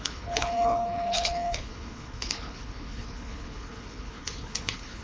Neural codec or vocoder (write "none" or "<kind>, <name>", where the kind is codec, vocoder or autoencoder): codec, HILCodec